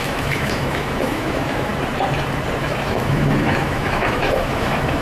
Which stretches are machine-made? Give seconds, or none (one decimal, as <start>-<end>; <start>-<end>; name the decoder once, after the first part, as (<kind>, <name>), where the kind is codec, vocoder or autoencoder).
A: 0.0-1.7 (autoencoder, DAC-VAE); 2.6-5.0